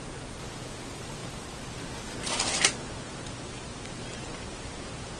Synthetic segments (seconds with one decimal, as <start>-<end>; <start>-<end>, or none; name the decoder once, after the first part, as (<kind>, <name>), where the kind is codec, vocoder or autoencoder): none